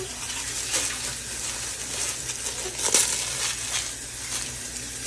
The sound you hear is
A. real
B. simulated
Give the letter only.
A